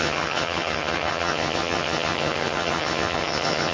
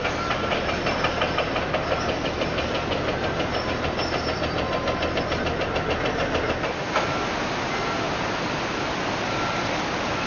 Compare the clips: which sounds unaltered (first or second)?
second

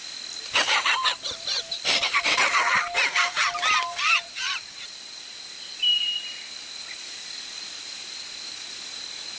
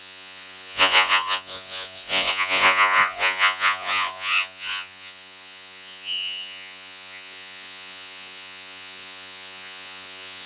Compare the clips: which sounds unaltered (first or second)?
first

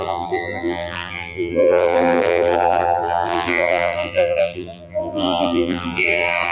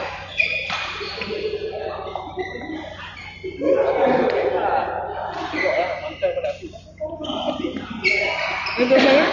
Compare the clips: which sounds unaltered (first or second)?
second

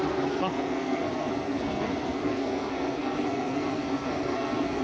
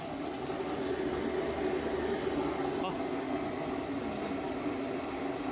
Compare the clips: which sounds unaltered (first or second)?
second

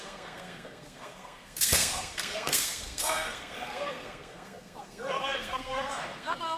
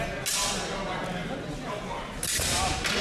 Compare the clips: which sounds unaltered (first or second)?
second